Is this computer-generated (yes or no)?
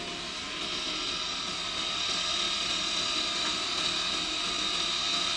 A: no